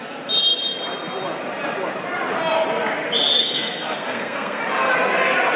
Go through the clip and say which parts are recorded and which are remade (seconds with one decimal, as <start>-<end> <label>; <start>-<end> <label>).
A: 0.0-3.4 recorded; 3.4-4.6 remade; 4.6-5.6 recorded